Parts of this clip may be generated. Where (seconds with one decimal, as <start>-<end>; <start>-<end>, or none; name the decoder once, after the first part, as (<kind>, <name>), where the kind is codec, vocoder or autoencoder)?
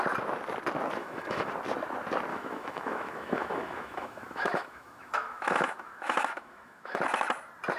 1.0-1.5 (autoencoder, DAC-VAE); 2.3-7.0